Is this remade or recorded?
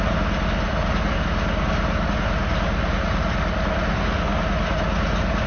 recorded